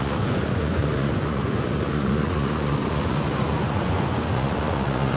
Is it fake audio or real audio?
fake